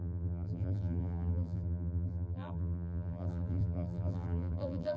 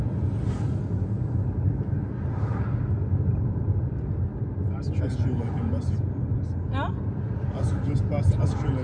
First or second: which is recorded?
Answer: second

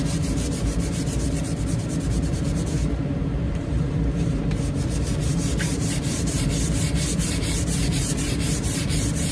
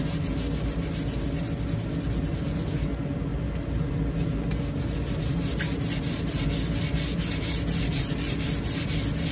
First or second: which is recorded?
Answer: second